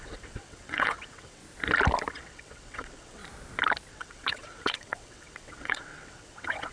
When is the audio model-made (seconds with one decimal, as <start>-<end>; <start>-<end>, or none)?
0.0-1.4; 2.1-3.2; 3.9-6.7